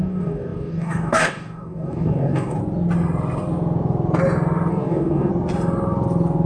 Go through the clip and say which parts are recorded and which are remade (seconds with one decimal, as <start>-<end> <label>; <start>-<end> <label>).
0.0-2.6 remade; 2.6-4.7 recorded; 4.7-5.3 remade; 5.3-6.5 recorded